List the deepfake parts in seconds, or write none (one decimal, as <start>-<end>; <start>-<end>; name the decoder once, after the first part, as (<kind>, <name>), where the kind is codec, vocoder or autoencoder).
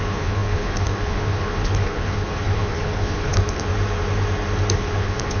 0.0-3.7 (codec, HILCodec); 4.8-5.4